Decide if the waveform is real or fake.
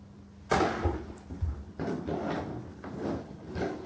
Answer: real